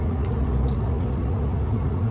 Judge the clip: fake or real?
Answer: fake